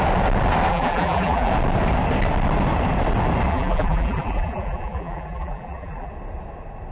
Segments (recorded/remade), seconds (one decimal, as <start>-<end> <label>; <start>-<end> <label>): 0.0-0.7 recorded; 0.7-1.5 remade; 1.5-3.5 recorded; 3.5-6.1 remade; 6.1-6.9 recorded